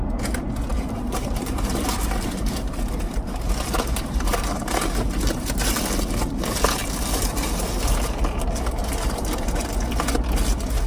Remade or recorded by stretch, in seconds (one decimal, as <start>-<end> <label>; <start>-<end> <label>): 0.0-0.7 recorded; 0.7-5.8 remade; 5.8-8.8 recorded; 8.8-9.7 remade; 9.7-10.9 recorded